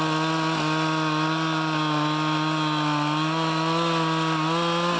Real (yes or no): yes